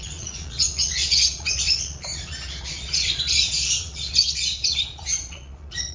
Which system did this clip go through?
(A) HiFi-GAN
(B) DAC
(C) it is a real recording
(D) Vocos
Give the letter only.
D